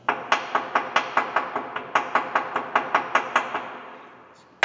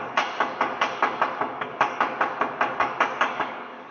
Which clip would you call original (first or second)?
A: first